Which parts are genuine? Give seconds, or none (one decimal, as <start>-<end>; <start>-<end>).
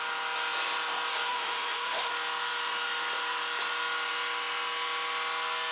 0.0-1.3; 2.1-5.7